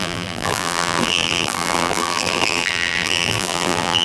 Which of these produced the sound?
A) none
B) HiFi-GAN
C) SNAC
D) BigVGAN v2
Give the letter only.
D